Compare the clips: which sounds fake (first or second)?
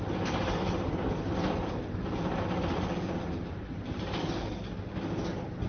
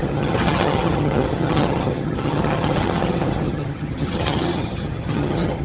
second